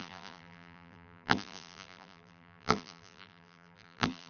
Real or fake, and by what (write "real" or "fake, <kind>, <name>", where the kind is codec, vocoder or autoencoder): fake, vocoder, BigVGAN v2